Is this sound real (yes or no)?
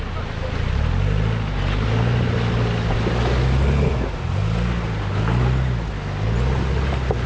yes